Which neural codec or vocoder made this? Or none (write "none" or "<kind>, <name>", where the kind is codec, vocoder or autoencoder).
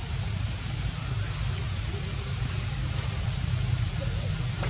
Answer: vocoder, BigVGAN v2